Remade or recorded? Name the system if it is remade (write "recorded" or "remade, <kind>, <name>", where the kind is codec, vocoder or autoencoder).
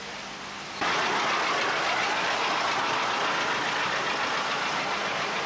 recorded